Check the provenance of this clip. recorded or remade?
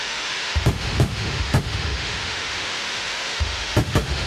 remade